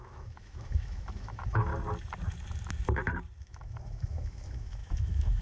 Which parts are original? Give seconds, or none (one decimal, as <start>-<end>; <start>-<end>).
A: 1.7-3.4

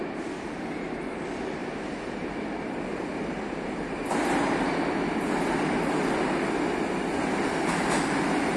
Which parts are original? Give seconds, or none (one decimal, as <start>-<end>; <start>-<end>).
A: 0.0-8.6

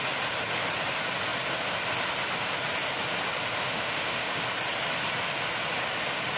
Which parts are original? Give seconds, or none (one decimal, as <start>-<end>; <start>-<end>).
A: 0.0-3.6; 4.4-6.4